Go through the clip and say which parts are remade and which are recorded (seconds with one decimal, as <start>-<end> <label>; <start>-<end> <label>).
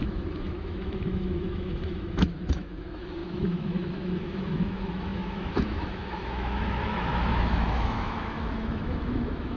0.0-9.6 remade